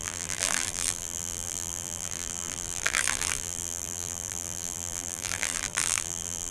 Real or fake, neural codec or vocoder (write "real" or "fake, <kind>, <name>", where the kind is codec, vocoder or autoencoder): fake, vocoder, BigVGAN v2